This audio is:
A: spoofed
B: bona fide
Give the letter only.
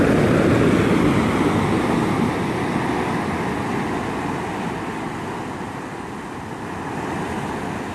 B